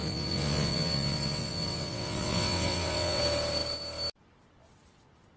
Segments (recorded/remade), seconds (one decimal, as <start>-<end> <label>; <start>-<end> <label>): 0.0-3.2 remade; 3.2-5.4 recorded

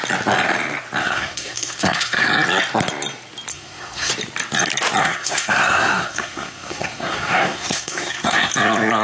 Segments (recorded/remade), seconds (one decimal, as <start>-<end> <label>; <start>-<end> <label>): 0.0-1.0 recorded; 1.0-2.3 remade; 2.3-3.5 recorded; 3.5-4.1 remade; 4.1-5.0 recorded; 5.0-8.5 remade; 8.5-9.0 recorded

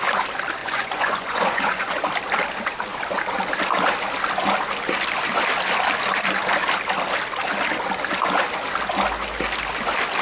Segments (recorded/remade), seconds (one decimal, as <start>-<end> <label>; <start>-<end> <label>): 0.0-0.6 recorded; 0.6-2.0 remade; 2.0-10.2 recorded

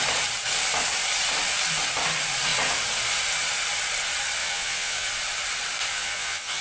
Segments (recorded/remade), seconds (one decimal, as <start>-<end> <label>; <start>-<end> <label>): 0.0-4.4 recorded; 4.4-5.1 remade; 5.1-5.9 recorded; 5.9-6.6 remade

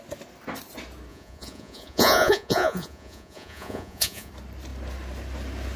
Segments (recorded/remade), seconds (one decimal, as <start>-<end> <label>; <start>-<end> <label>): 0.0-1.1 recorded; 1.1-4.3 remade; 4.3-5.8 recorded

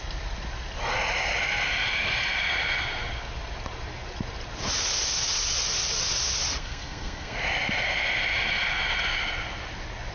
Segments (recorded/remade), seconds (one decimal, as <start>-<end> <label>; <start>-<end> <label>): 0.0-6.6 recorded; 6.6-7.4 remade; 7.4-10.1 recorded

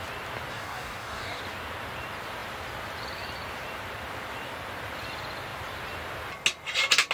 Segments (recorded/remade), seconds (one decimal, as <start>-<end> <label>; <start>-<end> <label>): 0.0-0.5 recorded; 0.5-1.4 remade; 1.4-7.1 recorded

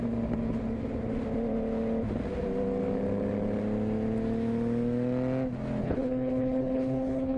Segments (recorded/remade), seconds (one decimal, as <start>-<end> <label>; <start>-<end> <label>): 0.0-5.8 recorded; 5.8-7.4 remade